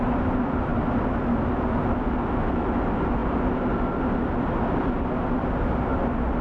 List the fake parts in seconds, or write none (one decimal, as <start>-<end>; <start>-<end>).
none